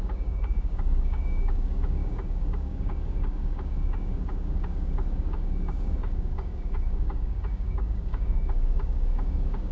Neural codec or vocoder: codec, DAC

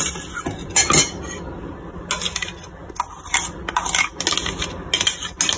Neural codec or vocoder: none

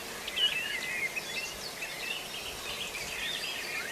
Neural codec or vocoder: none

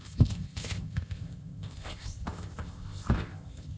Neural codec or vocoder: codec, ZipCodec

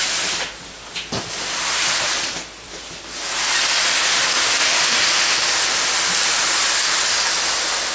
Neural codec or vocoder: none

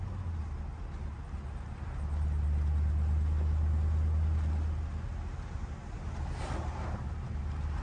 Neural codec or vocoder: none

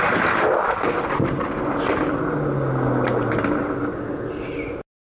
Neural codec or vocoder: none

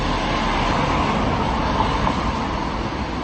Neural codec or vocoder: none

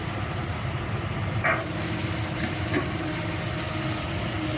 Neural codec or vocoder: none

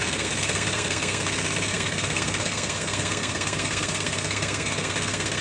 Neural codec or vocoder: codec, SNAC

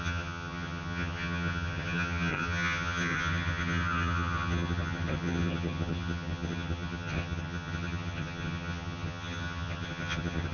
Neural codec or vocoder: vocoder, HiFi-GAN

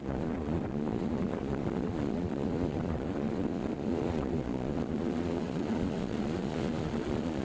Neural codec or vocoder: vocoder, Vocos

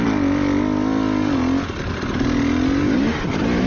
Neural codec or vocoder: none